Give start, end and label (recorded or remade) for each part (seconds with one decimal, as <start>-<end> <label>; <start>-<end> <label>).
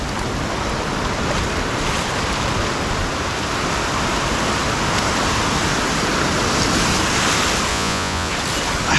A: 0.0-7.7 recorded; 7.7-8.3 remade; 8.3-9.0 recorded